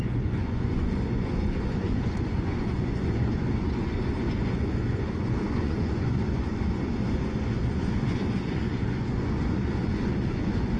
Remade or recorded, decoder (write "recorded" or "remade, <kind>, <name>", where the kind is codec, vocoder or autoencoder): remade, vocoder, Vocos